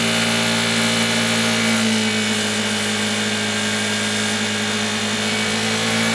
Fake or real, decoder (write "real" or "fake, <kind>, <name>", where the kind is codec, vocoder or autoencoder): real